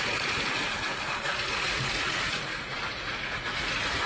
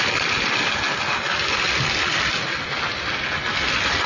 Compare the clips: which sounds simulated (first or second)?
first